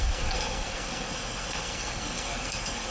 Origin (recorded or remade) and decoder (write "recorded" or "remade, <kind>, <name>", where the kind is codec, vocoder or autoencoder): remade, codec, SNAC